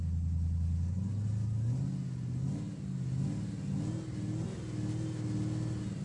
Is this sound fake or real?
real